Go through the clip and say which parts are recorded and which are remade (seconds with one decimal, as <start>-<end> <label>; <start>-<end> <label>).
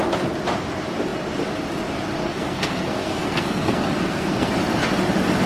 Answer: 0.0-2.2 recorded; 2.2-4.5 remade; 4.5-5.5 recorded